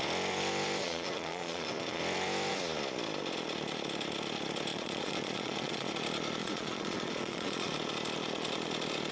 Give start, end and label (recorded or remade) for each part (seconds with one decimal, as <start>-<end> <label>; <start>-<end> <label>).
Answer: 0.0-0.8 recorded; 0.8-2.0 remade; 2.0-4.7 recorded; 4.7-5.9 remade; 5.9-6.4 recorded; 6.4-7.7 remade; 7.7-9.1 recorded